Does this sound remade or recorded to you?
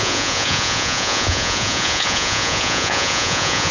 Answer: remade